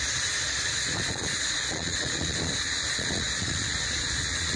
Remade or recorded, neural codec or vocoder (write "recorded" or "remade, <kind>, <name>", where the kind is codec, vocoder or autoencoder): remade, vocoder, Vocos